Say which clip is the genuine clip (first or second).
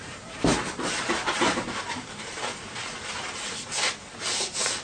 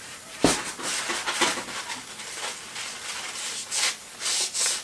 second